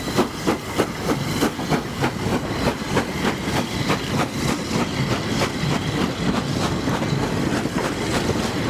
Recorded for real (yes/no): yes